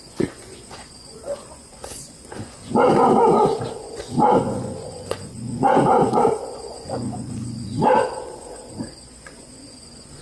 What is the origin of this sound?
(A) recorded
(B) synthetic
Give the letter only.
B